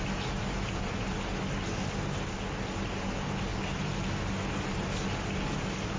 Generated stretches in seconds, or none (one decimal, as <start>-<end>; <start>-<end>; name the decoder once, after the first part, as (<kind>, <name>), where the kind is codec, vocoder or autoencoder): none